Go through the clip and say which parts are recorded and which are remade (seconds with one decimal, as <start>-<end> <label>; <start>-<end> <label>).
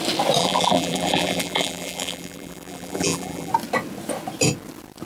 0.0-0.4 recorded; 0.4-3.5 remade; 3.5-5.1 recorded